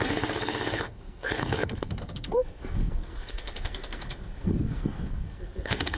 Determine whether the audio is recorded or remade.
remade